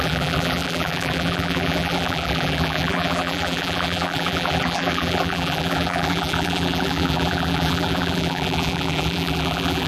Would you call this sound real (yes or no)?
no